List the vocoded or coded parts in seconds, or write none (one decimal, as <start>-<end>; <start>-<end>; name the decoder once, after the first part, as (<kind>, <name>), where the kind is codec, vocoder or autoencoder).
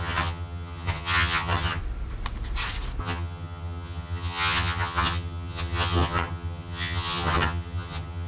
0.0-1.8 (vocoder, HiFi-GAN); 3.0-8.3